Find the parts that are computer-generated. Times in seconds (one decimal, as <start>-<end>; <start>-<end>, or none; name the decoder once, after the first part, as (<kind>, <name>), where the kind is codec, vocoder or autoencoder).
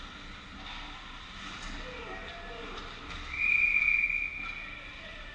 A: none